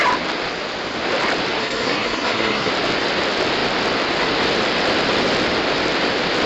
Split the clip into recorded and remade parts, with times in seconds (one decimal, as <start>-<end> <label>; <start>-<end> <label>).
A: 0.0-1.6 recorded; 1.6-2.7 remade; 2.7-6.5 recorded